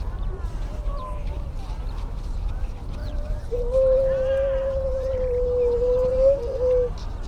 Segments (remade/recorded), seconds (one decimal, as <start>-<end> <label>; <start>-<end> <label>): 0.0-3.0 recorded; 3.0-6.1 remade; 6.1-7.3 recorded